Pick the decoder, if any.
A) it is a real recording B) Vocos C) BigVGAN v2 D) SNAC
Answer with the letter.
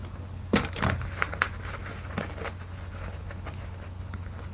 A